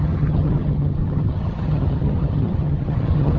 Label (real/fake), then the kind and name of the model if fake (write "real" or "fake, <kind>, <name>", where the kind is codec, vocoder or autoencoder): fake, vocoder, HiFi-GAN